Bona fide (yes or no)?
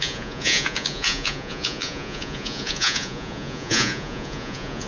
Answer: no